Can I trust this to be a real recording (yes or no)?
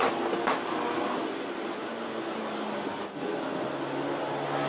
yes